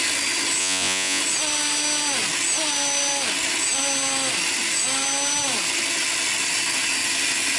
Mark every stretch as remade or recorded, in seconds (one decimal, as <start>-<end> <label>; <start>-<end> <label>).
0.0-0.6 recorded; 0.6-1.2 remade; 1.2-7.6 recorded